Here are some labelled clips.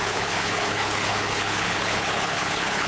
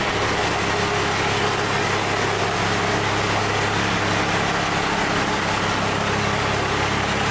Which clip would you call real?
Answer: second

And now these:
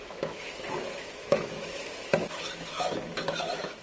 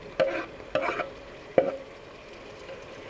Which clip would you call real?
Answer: second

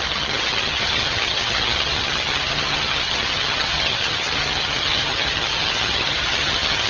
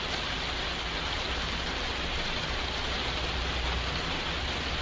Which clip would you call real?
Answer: second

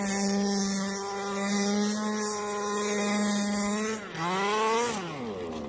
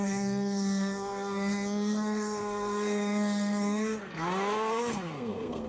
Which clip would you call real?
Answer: first